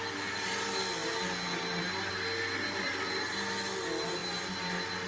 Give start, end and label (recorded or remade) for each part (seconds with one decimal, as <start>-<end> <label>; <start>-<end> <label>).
0.0-5.1 recorded